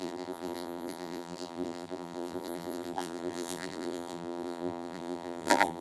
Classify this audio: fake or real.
fake